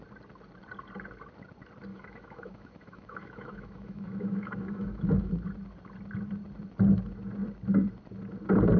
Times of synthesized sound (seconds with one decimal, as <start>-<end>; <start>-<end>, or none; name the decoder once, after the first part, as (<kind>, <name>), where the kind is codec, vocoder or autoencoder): 1.9-5.3 (autoencoder, DAC-VAE)